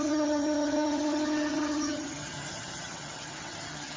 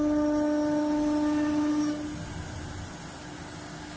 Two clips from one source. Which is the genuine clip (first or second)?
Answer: second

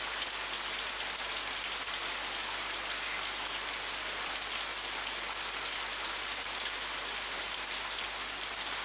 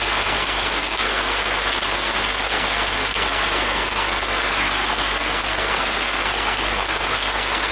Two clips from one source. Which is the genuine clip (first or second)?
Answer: first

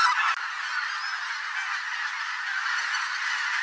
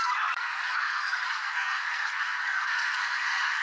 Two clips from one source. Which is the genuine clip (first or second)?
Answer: first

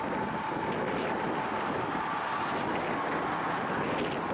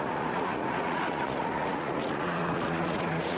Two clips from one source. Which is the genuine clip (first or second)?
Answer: first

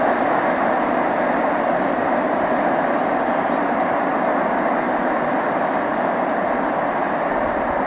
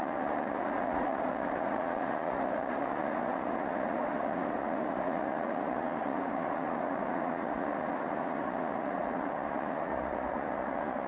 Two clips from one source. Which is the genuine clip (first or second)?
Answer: first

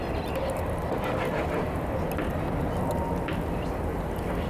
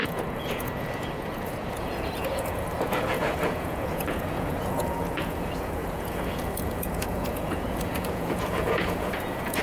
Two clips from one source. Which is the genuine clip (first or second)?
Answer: first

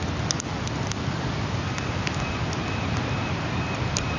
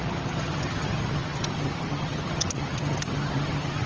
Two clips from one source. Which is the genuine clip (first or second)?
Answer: first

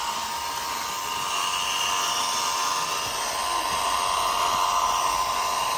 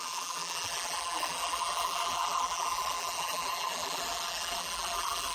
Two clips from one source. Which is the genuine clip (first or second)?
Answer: first